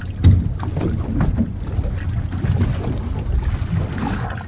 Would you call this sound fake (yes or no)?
no